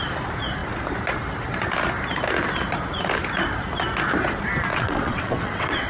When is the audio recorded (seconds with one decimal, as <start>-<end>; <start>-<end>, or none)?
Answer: 0.0-4.7